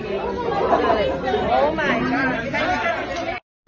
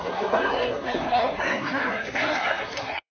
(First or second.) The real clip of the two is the first